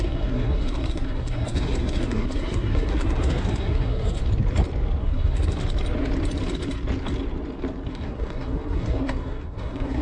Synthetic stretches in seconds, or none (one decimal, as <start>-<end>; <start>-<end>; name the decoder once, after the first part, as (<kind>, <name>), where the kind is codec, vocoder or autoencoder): 0.0-4.2 (codec, SNAC); 5.0-5.6; 7.9-10.0